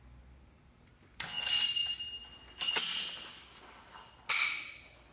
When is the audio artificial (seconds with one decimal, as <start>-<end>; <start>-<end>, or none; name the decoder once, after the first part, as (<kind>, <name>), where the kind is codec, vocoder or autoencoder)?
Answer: none